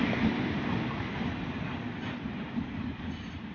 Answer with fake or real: real